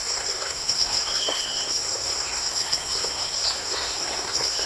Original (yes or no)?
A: no